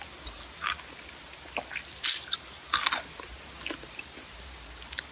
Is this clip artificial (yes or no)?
no